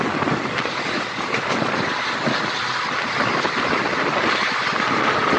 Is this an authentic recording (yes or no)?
yes